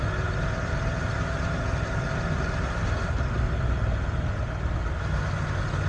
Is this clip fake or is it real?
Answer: real